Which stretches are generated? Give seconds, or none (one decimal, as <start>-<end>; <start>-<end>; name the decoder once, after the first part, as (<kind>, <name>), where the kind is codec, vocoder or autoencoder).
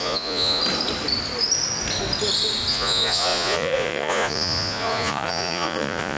0.0-0.6 (vocoder, Vocos); 2.7-6.2